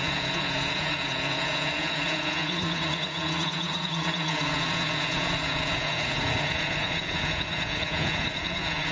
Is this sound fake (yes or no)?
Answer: yes